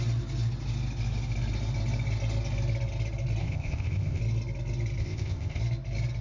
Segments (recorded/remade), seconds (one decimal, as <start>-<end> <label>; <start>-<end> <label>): 0.0-3.4 recorded; 3.4-4.2 remade; 4.2-5.0 recorded; 5.0-5.6 remade; 5.6-6.2 recorded